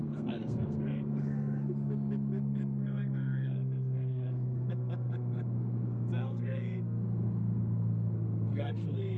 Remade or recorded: remade